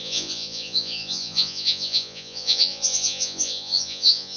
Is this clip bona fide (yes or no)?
no